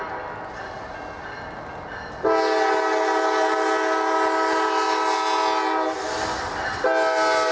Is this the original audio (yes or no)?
yes